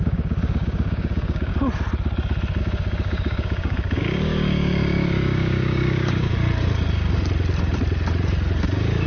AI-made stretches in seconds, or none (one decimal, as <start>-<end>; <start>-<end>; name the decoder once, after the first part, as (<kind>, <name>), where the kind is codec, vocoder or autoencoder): 0.0-1.5 (codec, DAC); 2.6-6.3; 8.6-9.1